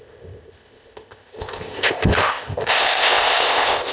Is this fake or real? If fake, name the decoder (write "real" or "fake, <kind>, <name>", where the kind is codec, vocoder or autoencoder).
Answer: fake, codec, ZipCodec